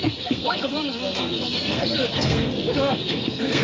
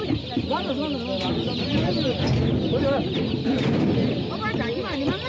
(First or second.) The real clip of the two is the second